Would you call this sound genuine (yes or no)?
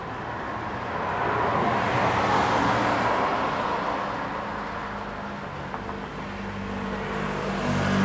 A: yes